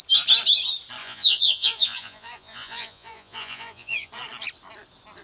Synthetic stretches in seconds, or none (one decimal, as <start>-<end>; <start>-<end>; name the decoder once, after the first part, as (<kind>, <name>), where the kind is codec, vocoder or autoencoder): 1.0-4.1 (vocoder, Vocos)

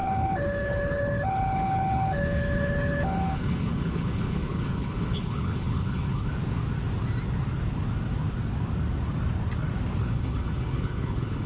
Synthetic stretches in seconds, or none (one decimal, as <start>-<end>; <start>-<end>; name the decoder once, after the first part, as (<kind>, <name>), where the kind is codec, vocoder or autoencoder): 0.0-6.3 (codec, HILCodec); 10.0-11.5

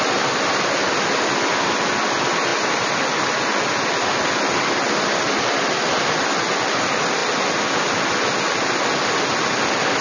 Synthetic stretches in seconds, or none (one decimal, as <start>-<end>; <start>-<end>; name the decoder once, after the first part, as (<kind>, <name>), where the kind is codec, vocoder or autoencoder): none

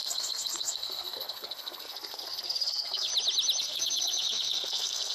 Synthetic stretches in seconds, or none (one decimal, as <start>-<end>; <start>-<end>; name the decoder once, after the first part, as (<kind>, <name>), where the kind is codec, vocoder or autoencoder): 0.0-3.1 (codec, SNAC); 3.6-5.1

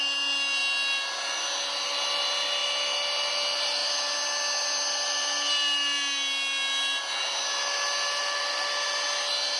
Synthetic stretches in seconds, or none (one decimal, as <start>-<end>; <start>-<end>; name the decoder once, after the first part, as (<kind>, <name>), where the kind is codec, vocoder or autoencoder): none